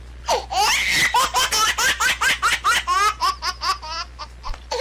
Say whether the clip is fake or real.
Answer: real